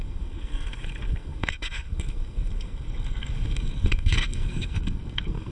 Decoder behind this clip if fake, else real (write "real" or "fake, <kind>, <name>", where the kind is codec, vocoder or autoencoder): fake, codec, SNAC